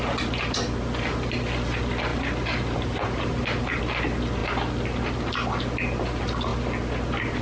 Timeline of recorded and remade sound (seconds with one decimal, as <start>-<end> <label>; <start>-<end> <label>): 0.0-2.1 recorded; 2.1-3.8 remade; 3.8-7.4 recorded